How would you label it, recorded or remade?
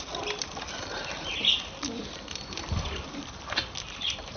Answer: recorded